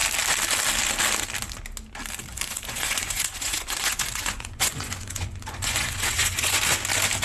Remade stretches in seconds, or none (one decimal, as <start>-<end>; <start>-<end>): 2.3-6.6